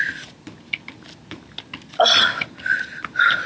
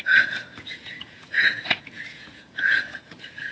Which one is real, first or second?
first